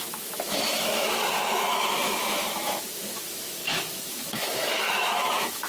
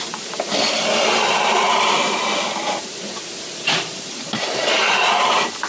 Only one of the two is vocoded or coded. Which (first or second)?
first